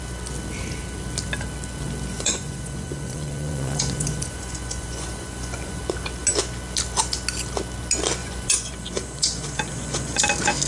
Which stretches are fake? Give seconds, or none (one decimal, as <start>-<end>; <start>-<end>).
2.1-5.8; 8.2-10.2